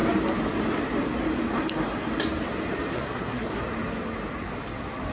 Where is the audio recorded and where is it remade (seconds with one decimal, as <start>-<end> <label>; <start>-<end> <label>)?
0.0-2.9 recorded; 2.9-3.6 remade; 3.6-5.1 recorded

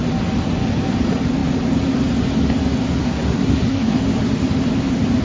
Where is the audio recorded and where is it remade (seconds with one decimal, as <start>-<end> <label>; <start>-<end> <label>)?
0.0-3.0 recorded; 3.0-4.0 remade; 4.0-5.2 recorded

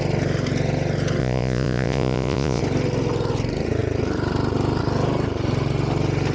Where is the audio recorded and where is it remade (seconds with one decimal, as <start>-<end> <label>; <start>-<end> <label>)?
0.0-1.2 recorded; 1.2-2.6 remade; 2.6-6.3 recorded

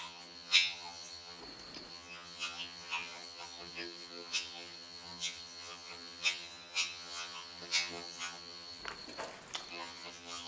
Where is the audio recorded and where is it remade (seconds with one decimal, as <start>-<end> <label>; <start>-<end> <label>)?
0.0-1.4 remade; 1.4-1.9 recorded; 1.9-8.8 remade; 8.8-9.7 recorded; 9.7-10.5 remade

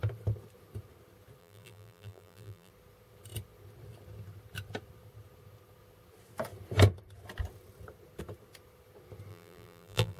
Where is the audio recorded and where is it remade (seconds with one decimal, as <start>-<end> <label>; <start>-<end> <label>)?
0.0-1.4 recorded; 1.4-2.7 remade; 2.7-9.3 recorded; 9.3-10.2 remade

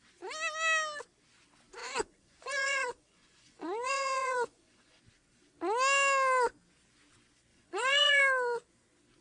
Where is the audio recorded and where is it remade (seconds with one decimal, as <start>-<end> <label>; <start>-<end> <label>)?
0.0-1.8 recorded; 1.8-5.0 remade; 5.0-7.5 recorded; 7.5-8.2 remade; 8.2-9.2 recorded

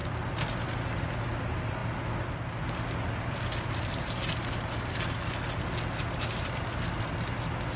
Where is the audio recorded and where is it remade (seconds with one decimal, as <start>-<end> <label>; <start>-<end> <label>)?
0.0-7.8 recorded